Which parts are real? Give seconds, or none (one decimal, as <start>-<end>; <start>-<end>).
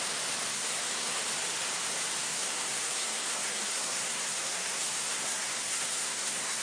0.0-0.5; 1.2-2.2